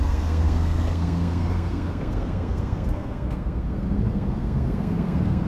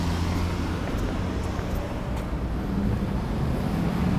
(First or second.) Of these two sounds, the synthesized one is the first